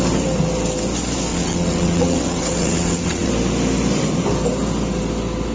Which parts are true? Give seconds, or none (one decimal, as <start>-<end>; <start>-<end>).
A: 0.0-1.3; 3.3-5.5